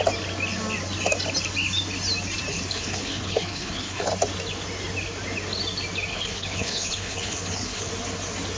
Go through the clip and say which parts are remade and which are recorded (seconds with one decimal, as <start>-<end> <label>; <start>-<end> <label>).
0.0-2.5 recorded; 2.5-4.1 remade; 4.1-6.1 recorded; 6.1-7.9 remade; 7.9-8.6 recorded